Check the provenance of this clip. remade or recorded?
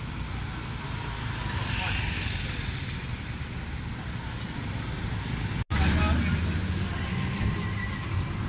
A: recorded